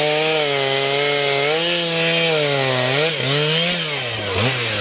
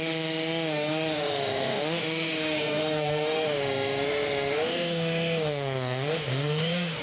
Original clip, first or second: first